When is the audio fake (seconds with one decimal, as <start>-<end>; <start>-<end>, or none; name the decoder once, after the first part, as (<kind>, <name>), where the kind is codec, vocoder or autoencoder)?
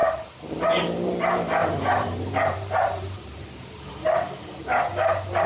0.0-0.5 (vocoder, BigVGAN v2); 1.6-3.9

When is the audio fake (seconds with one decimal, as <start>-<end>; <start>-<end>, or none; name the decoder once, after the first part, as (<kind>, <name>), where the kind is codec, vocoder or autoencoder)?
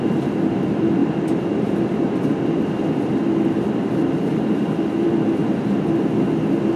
0.0-5.4 (vocoder, BigVGAN v2)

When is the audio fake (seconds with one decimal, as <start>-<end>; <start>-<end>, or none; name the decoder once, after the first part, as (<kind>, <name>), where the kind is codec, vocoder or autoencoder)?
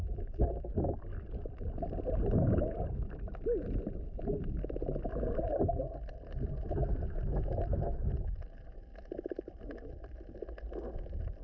0.0-2.3 (vocoder, BigVGAN v2)